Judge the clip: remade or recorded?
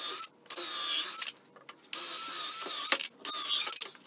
recorded